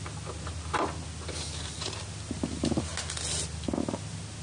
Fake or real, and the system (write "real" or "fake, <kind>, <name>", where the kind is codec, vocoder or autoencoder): real